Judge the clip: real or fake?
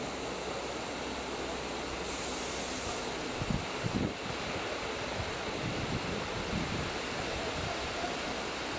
real